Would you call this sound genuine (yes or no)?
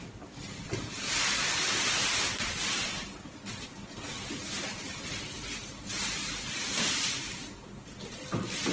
yes